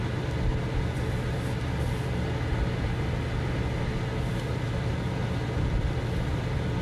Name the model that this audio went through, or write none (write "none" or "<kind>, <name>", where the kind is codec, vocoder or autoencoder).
none